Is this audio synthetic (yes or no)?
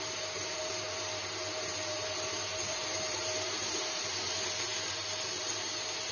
yes